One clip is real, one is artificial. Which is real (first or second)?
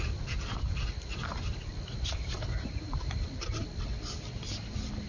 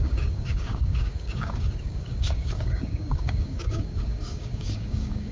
first